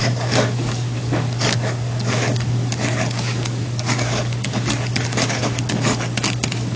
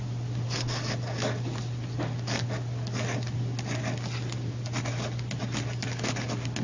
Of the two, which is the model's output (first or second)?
first